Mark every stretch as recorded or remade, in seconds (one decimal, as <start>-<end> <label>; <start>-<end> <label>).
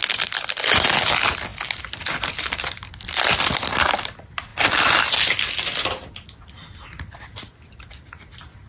0.0-8.7 recorded